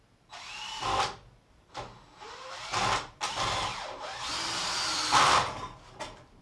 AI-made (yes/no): no